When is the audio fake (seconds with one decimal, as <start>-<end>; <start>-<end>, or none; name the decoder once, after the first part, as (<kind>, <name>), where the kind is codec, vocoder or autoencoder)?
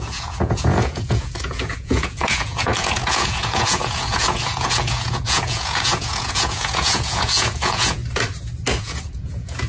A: 0.0-8.0 (vocoder, Vocos); 8.8-9.7